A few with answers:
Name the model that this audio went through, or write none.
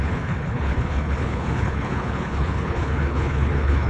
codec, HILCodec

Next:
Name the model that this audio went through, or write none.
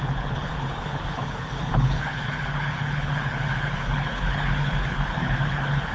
codec, HILCodec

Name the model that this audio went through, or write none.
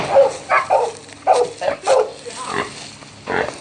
none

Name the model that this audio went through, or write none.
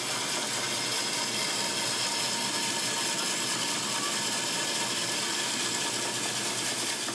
none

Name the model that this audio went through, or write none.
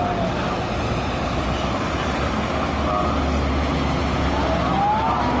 none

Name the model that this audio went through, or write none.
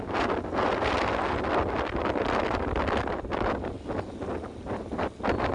none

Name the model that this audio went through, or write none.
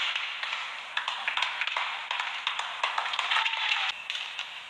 none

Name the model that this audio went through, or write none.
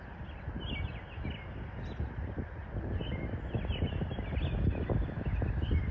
none